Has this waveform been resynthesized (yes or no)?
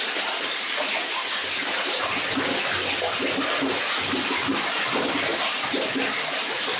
no